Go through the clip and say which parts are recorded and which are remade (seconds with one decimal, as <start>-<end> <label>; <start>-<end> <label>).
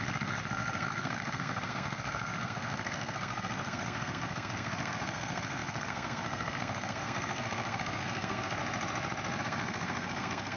0.0-8.6 remade; 8.6-9.4 recorded; 9.4-10.6 remade